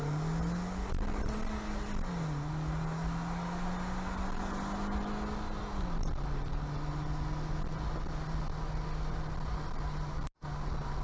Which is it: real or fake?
real